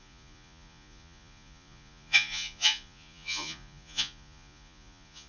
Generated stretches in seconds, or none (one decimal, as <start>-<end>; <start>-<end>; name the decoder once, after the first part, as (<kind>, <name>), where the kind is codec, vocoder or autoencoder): 0.0-5.3 (vocoder, Vocos)